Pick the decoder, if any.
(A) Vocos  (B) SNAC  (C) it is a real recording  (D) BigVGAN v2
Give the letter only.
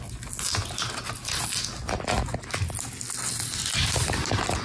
C